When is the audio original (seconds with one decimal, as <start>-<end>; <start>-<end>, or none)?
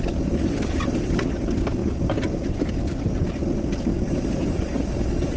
0.0-5.4